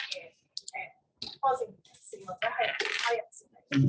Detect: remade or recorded recorded